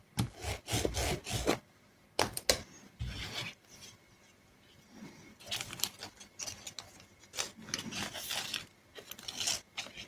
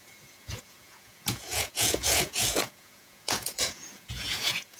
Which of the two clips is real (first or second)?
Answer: first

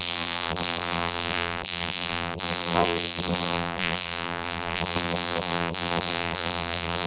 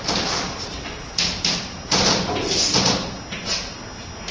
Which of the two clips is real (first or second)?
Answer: second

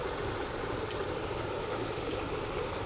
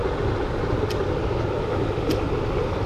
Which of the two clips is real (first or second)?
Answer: second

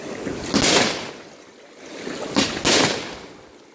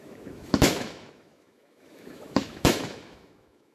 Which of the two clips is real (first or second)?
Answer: first